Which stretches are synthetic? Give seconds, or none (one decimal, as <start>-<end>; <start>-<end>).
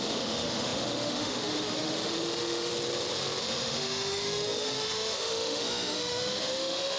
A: 0.0-2.7; 3.4-7.0